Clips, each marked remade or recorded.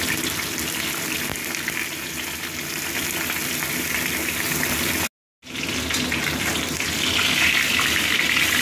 recorded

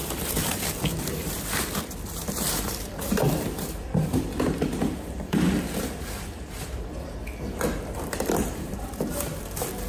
remade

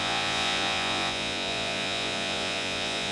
remade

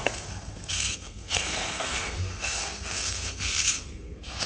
remade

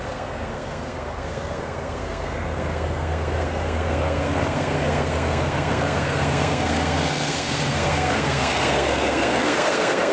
remade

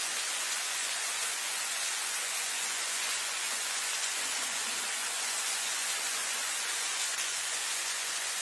remade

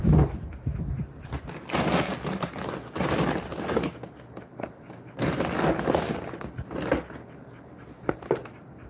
recorded